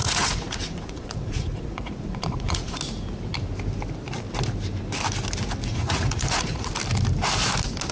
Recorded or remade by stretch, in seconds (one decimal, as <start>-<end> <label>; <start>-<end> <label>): 0.0-2.8 remade; 2.8-5.7 recorded; 5.7-6.7 remade; 6.7-7.9 recorded